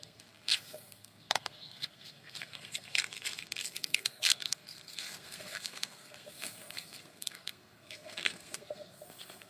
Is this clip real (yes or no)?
no